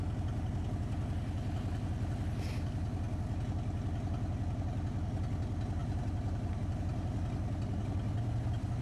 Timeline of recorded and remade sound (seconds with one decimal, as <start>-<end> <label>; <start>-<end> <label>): 0.0-5.8 recorded; 5.8-6.8 remade; 6.8-8.8 recorded